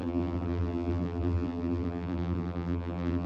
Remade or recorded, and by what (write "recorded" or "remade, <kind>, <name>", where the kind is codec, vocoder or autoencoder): remade, vocoder, BigVGAN v2